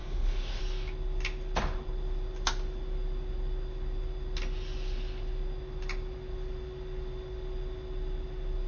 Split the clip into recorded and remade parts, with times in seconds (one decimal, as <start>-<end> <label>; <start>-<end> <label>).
0.0-0.6 remade; 0.6-8.7 recorded

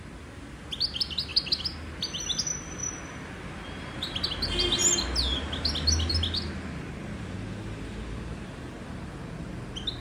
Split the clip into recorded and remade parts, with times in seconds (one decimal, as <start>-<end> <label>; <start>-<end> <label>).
0.0-10.0 recorded

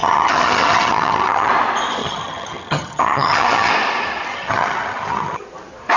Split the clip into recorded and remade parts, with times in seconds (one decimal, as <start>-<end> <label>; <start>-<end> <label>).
0.0-1.5 remade; 1.5-2.0 recorded; 2.0-3.7 remade; 3.7-4.3 recorded; 4.3-5.4 remade; 5.4-6.0 recorded

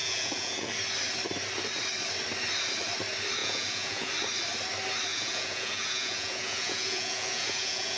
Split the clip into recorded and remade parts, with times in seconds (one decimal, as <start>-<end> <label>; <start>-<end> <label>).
0.0-0.7 remade; 0.7-3.4 recorded; 3.4-4.1 remade; 4.1-5.1 recorded; 5.1-8.0 remade

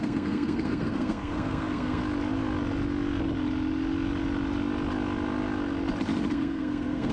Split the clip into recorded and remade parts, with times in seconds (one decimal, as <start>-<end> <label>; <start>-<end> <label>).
0.0-2.0 remade; 2.0-6.3 recorded; 6.3-7.1 remade

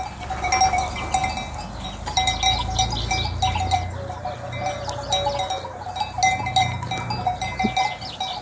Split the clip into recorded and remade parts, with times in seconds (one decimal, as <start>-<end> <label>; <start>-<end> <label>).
0.0-8.4 recorded